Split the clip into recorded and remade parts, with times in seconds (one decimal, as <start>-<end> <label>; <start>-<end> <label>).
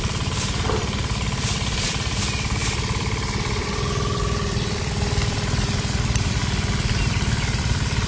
0.0-6.4 remade; 6.4-7.1 recorded; 7.1-8.1 remade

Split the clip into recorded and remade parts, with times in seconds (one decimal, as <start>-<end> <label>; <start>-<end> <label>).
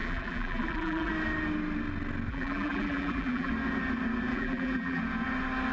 0.0-1.1 remade; 1.1-2.3 recorded; 2.3-3.5 remade; 3.5-4.3 recorded; 4.3-5.0 remade; 5.0-5.7 recorded